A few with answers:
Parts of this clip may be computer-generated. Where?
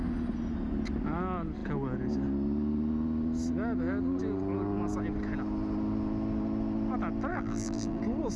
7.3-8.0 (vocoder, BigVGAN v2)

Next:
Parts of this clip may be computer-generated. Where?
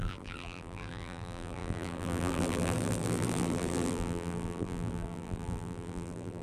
0.0-6.4 (vocoder, BigVGAN v2)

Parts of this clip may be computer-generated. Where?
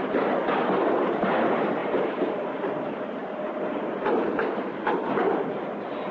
1.8-2.3 (vocoder, BigVGAN v2)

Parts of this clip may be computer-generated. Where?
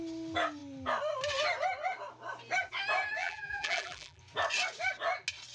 3.2-4.2 (vocoder, BigVGAN v2)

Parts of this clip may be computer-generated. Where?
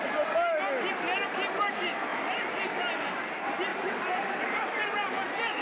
2.1-2.9 (vocoder, BigVGAN v2); 3.7-5.6